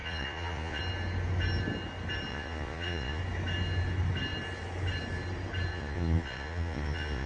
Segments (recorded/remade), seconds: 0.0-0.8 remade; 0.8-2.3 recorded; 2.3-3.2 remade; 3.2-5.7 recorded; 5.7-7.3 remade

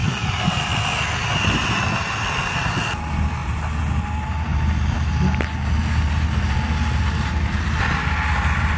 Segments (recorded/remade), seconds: 0.0-3.4 recorded; 3.4-7.3 remade; 7.3-8.8 recorded

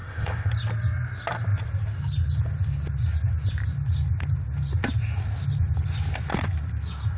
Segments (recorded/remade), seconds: 0.0-0.5 remade; 0.5-7.2 recorded

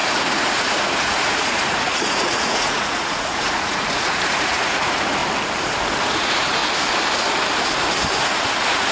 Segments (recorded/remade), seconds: 0.0-5.2 remade; 5.2-6.0 recorded; 6.0-6.6 remade; 6.6-8.2 recorded; 8.2-8.9 remade